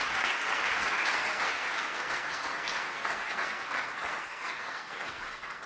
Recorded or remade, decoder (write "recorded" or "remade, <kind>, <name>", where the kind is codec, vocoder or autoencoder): remade, codec, SNAC